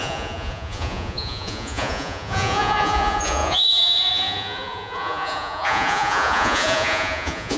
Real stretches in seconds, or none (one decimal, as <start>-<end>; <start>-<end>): none